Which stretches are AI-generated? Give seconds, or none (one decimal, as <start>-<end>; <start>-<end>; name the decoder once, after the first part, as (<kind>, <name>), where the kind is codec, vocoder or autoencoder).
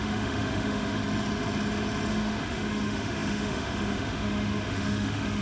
0.0-1.0 (autoencoder, DAC-VAE); 2.1-5.4